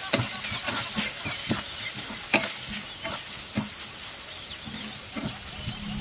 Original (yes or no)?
yes